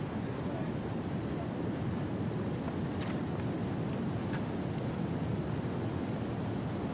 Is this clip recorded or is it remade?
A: recorded